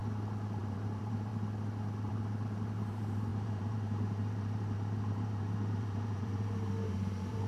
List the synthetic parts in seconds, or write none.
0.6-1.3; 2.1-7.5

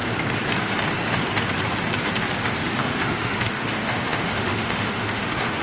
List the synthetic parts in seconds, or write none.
2.6-5.6

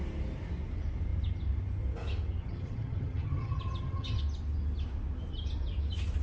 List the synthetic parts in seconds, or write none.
2.4-4.2